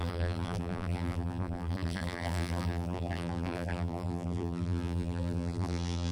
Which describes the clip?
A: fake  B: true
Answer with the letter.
A